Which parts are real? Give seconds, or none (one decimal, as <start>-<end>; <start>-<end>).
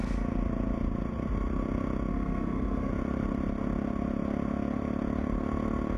0.0-2.1; 2.9-6.0